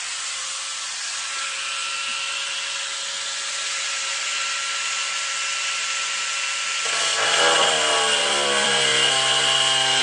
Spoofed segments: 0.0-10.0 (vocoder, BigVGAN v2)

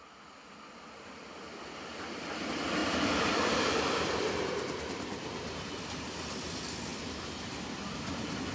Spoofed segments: 2.8-5.6 (vocoder, BigVGAN v2)